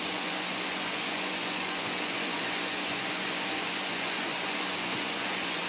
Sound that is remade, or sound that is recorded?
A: remade